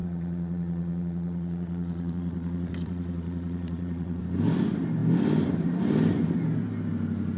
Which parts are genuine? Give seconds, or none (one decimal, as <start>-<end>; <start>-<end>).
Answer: 4.2-7.4